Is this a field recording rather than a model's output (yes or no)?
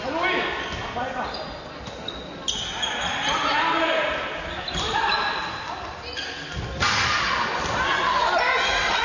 yes